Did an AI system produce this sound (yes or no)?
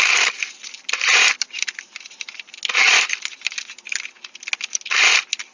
no